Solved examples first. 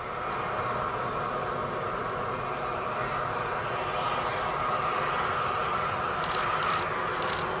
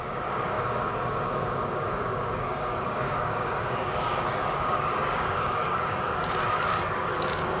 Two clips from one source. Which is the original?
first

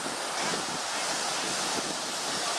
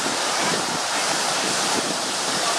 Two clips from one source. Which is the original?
first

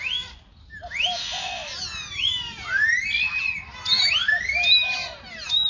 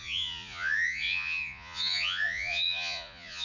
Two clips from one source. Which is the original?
first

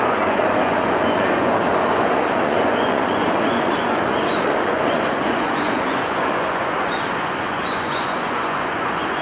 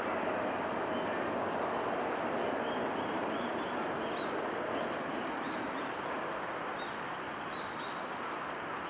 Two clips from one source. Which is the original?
second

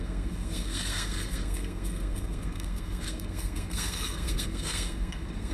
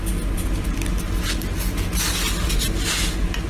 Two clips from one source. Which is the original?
second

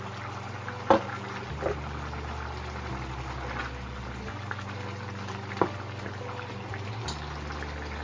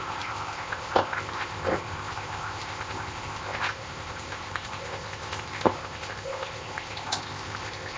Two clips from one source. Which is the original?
first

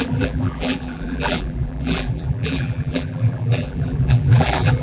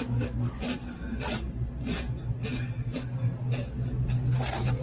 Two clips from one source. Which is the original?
second